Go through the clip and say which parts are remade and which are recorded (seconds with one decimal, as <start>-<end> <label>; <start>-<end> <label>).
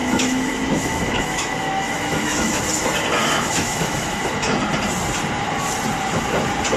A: 0.0-2.6 remade; 2.6-3.2 recorded; 3.2-4.2 remade; 4.2-6.8 recorded